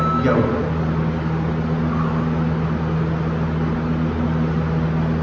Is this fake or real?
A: real